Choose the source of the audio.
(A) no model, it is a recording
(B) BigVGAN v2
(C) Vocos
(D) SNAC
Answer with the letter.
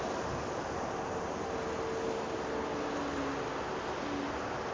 A